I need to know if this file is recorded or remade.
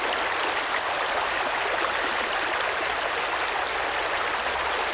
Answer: recorded